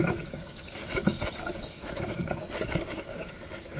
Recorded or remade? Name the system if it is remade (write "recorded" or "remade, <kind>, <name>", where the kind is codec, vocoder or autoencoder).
remade, codec, DAC